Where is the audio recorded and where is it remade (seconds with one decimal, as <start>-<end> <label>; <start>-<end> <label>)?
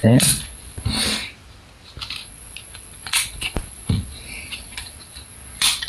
0.0-0.9 remade; 0.9-2.2 recorded; 2.2-5.9 remade